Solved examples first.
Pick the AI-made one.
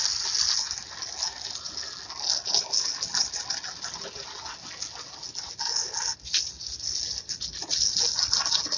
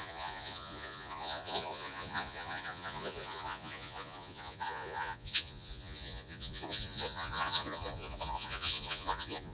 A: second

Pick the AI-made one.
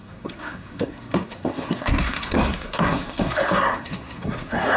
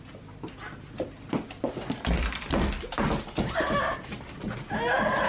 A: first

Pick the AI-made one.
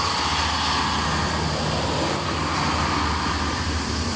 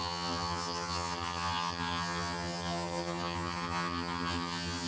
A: second